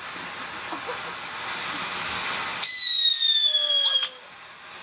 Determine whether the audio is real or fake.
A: real